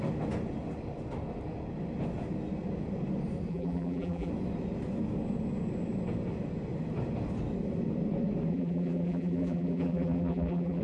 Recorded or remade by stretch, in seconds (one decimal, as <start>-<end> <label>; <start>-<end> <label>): 0.0-3.5 recorded; 3.5-4.3 remade; 4.3-8.5 recorded; 8.5-10.8 remade